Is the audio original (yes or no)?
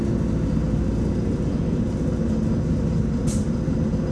yes